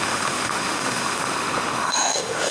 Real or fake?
fake